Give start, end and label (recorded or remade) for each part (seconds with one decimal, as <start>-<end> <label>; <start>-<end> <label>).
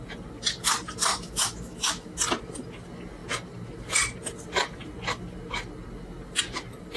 0.0-1.1 recorded; 1.1-2.2 remade; 2.2-7.0 recorded